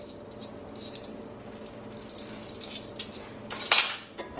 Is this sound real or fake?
real